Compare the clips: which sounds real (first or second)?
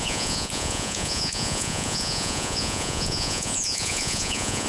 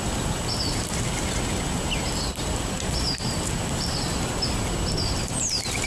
second